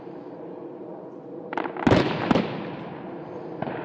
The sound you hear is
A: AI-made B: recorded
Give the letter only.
B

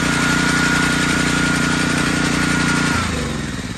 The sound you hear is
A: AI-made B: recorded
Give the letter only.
A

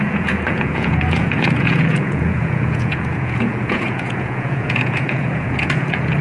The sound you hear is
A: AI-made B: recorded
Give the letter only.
A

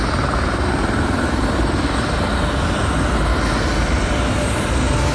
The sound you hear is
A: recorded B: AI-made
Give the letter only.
A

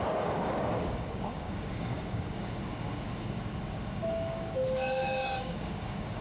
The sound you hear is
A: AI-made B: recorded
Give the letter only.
A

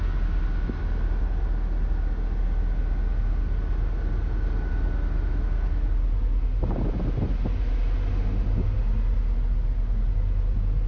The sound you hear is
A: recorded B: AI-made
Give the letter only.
A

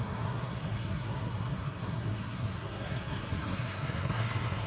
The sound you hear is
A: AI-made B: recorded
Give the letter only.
A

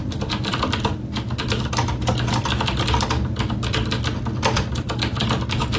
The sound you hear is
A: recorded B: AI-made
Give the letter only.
A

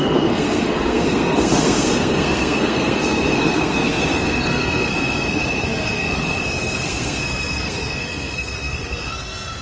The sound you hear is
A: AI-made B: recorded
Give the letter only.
A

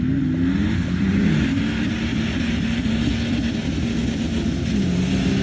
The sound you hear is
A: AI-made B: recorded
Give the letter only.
B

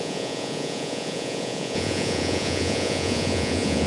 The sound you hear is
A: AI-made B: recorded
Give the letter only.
A